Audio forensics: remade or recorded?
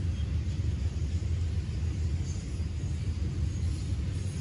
recorded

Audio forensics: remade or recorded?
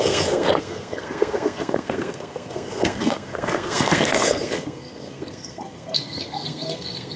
remade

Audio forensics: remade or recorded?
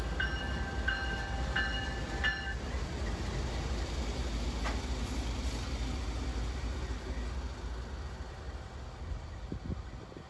recorded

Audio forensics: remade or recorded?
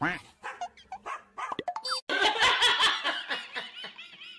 recorded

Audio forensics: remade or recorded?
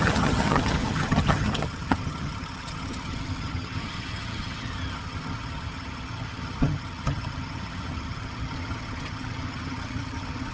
remade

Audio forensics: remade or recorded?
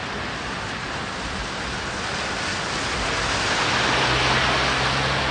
recorded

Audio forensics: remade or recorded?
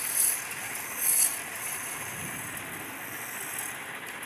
recorded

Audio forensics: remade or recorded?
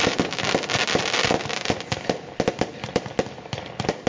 recorded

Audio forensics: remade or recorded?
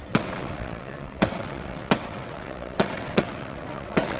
remade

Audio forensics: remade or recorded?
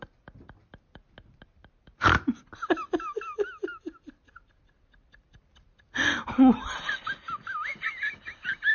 recorded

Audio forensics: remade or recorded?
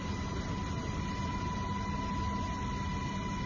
recorded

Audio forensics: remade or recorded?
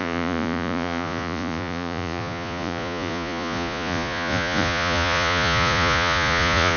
remade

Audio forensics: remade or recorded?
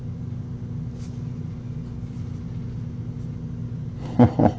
recorded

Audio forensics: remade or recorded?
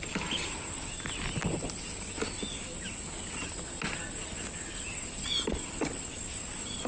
recorded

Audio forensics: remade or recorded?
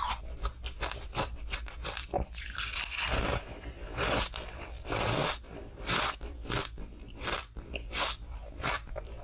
recorded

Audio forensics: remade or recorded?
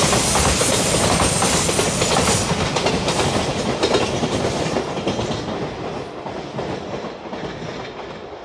remade